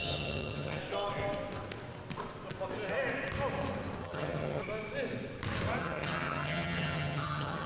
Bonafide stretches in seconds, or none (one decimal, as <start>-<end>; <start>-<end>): 0.8-4.0; 4.6-5.8